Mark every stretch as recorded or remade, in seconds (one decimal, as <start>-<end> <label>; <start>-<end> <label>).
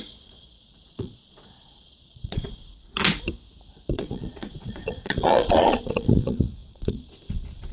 0.0-2.6 remade; 2.6-3.9 recorded; 3.9-7.7 remade